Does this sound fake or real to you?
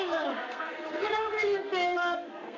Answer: fake